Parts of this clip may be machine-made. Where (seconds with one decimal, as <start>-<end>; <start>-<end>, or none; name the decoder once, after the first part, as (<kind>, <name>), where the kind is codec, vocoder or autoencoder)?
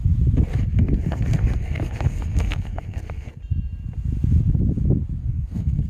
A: 0.8-3.4 (codec, SNAC); 5.2-5.9